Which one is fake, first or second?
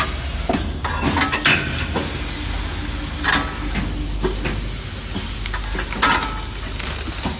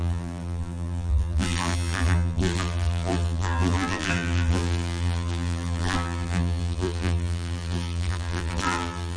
second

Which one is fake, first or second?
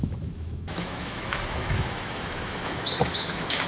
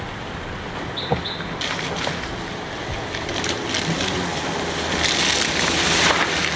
first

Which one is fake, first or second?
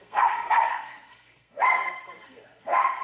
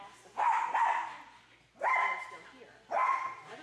first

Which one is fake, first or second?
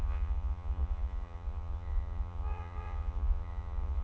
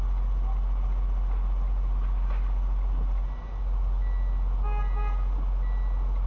first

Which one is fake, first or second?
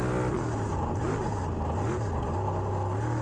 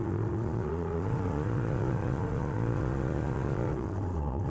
second